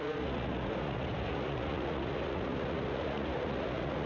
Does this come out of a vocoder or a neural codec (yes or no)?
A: yes